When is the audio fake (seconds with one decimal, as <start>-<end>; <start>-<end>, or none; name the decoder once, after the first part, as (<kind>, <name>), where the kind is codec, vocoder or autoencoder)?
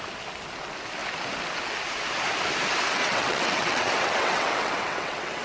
3.0-5.4 (vocoder, WaveNeXt)